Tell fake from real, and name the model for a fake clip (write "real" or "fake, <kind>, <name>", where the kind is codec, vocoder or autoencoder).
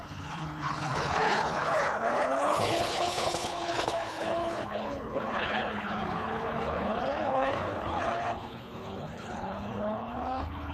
fake, codec, HILCodec